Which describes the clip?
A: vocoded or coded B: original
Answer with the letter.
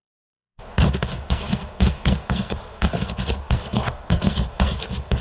A